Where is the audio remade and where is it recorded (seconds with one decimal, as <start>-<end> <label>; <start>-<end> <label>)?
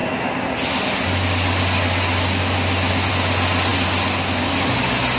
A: 0.0-5.2 recorded